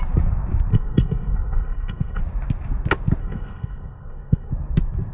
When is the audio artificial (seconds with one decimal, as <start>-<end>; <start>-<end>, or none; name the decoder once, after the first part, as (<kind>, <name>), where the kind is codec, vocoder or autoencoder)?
0.7-2.2 (codec, SNAC); 3.2-4.5